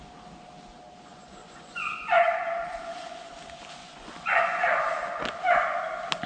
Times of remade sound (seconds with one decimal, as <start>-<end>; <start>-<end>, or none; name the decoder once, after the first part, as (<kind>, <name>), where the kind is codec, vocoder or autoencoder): 1.1-3.3 (vocoder, Vocos); 3.8-5.8